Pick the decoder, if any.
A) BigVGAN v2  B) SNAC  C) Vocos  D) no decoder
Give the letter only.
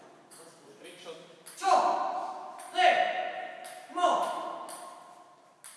D